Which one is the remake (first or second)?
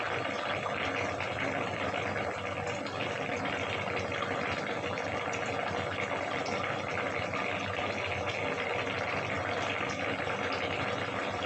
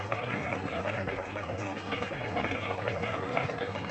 second